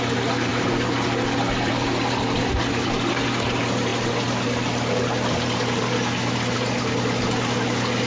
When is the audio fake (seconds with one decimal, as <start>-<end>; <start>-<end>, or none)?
none